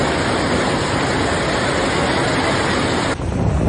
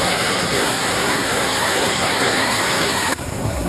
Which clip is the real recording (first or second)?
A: first